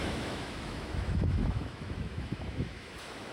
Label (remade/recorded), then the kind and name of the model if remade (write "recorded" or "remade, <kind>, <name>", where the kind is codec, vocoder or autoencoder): remade, autoencoder, DAC-VAE